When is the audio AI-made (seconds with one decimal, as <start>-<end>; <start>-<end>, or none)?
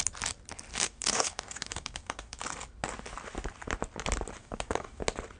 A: 0.7-2.4; 4.4-5.0